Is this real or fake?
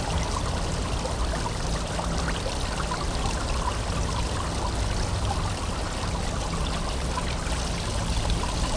real